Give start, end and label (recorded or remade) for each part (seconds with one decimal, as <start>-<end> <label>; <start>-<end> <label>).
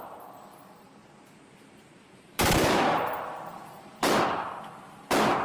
0.0-1.0 recorded; 1.0-4.2 remade; 4.2-5.4 recorded